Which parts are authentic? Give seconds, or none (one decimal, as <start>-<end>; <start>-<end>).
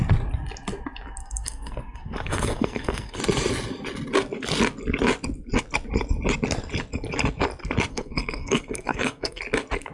0.0-1.2; 3.2-7.9; 9.4-9.9